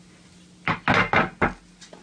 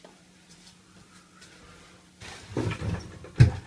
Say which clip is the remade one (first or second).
second